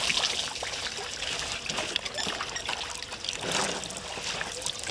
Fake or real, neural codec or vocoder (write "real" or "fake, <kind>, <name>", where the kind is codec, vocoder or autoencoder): real